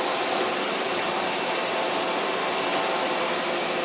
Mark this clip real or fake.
real